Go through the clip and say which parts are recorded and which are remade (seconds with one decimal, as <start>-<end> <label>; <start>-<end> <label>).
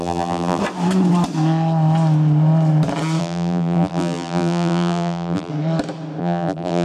0.0-0.6 remade; 0.6-3.2 recorded; 3.2-5.5 remade; 5.5-6.2 recorded; 6.2-6.8 remade